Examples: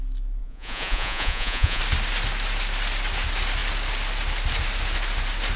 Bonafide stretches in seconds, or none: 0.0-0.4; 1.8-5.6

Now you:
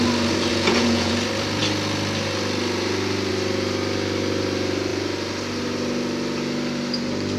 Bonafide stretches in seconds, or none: 0.0-0.5; 1.1-7.4

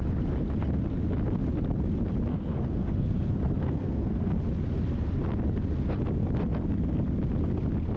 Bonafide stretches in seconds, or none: 0.0-2.3; 4.3-8.0

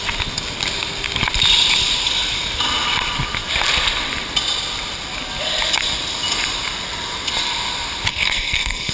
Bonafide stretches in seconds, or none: 0.0-8.1

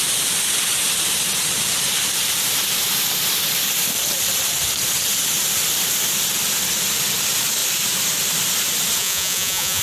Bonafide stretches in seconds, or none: 0.0-9.0

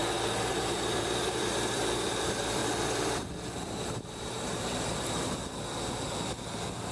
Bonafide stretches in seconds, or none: 0.0-0.5; 2.6-3.8; 5.4-6.9

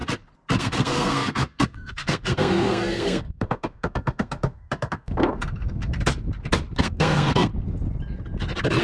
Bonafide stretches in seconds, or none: 0.0-0.6; 5.9-6.8; 7.5-8.8